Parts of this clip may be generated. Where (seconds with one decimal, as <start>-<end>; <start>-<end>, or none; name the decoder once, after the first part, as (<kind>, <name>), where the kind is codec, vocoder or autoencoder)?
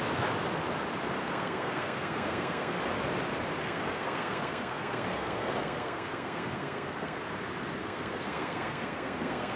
1.2-2.8 (codec, SNAC); 3.6-7.2; 7.8-9.6